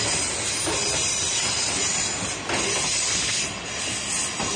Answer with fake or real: real